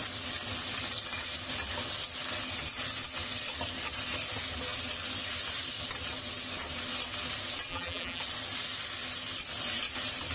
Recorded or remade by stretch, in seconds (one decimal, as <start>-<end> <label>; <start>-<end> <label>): 0.0-7.7 recorded; 7.7-8.2 remade; 8.2-10.3 recorded